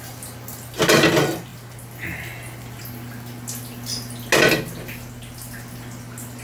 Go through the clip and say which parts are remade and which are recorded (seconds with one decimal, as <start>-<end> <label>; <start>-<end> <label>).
0.0-6.4 recorded